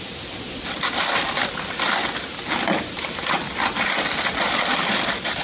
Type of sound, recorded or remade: recorded